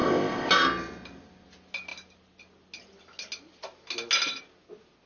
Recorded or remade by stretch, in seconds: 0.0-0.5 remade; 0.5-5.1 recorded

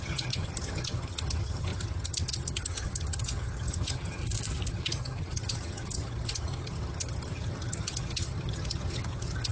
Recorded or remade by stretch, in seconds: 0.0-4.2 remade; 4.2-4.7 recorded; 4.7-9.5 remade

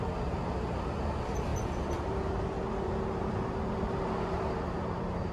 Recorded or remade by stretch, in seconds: 0.0-5.3 recorded

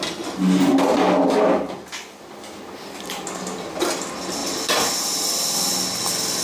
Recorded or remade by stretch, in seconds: 0.0-6.4 recorded

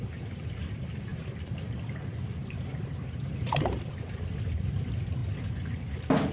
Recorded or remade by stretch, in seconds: 0.0-1.1 recorded; 1.1-3.8 remade; 3.8-6.3 recorded